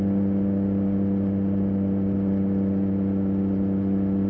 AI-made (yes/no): no